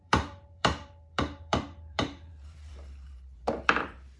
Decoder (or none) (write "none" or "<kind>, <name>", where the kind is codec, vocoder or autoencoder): vocoder, BigVGAN v2